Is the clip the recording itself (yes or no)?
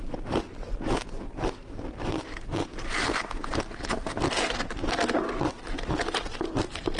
yes